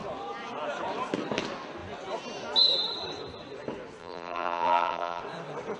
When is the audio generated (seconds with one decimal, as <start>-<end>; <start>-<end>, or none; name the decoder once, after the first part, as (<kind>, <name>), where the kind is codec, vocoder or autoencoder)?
4.0-5.2 (vocoder, BigVGAN v2)